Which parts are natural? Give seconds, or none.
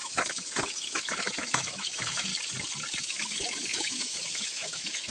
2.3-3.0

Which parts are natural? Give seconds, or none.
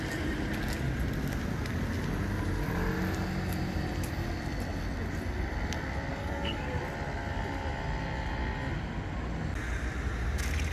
0.0-6.1; 6.8-10.7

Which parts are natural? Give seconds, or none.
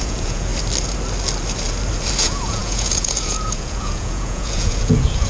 0.5-2.2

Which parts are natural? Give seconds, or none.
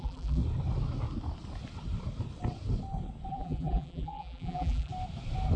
0.4-3.3; 4.9-5.6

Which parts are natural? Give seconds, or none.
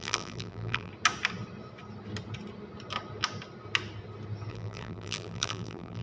0.9-4.5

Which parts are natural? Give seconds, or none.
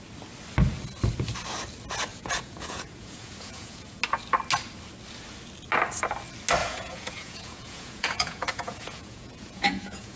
0.0-2.1; 4.0-6.6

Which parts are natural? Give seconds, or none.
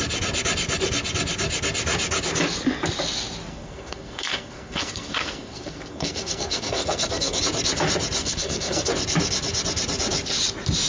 0.0-3.5; 7.4-8.2; 8.9-10.9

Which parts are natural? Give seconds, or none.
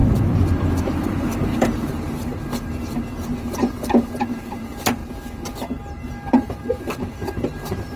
0.0-0.8; 2.3-3.5; 5.0-6.3